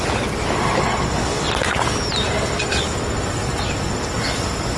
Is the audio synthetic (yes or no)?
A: no